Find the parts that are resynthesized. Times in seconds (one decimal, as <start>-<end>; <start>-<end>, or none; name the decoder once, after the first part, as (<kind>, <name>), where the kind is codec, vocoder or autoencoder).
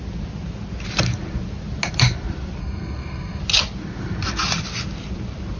2.6-3.4 (codec, SNAC)